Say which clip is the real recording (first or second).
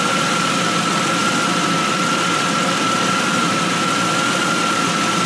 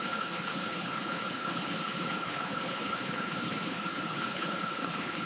first